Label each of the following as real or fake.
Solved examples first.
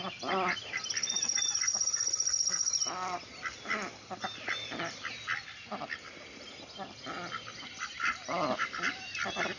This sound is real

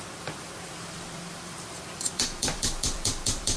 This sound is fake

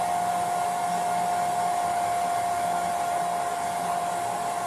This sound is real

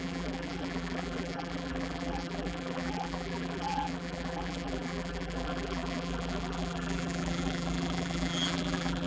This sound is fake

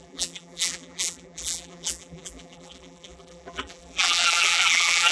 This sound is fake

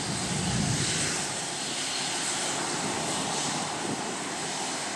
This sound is real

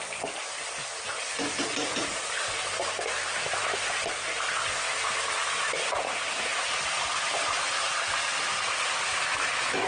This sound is fake